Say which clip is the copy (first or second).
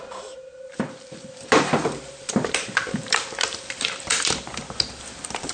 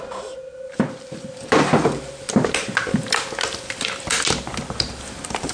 first